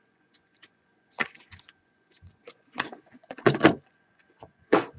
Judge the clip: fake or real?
fake